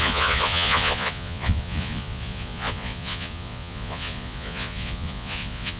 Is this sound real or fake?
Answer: fake